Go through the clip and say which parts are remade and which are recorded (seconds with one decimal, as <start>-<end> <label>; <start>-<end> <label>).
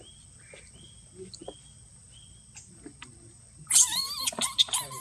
0.0-5.0 recorded